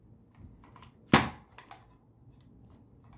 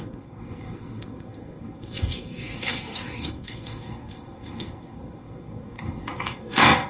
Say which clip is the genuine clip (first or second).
first